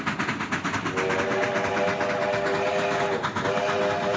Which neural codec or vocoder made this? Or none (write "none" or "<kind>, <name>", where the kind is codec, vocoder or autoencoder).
none